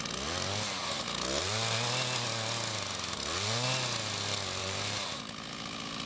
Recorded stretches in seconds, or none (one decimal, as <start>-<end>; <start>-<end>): 0.0-4.6; 5.2-6.1